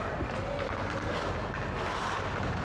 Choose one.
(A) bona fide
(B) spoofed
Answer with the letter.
A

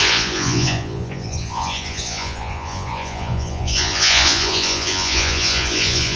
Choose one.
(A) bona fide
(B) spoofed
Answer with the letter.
B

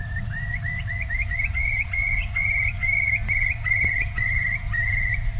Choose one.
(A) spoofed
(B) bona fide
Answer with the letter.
A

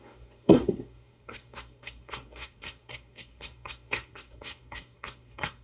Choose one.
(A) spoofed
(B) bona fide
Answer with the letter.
A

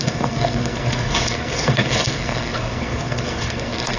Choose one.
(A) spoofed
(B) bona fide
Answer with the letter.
A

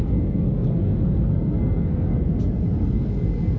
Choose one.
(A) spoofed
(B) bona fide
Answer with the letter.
A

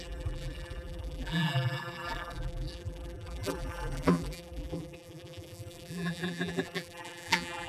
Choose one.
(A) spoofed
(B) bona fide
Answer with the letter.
A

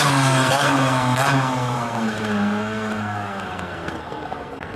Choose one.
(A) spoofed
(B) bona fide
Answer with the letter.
A